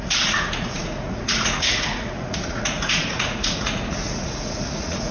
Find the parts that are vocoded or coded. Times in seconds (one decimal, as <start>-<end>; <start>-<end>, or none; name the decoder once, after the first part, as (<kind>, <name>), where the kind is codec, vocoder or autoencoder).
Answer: 0.0-5.1 (vocoder, Vocos)